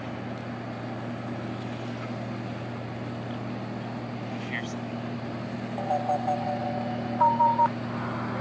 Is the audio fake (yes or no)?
no